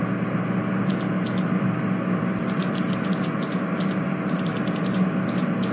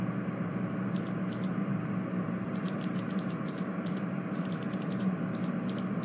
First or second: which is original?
first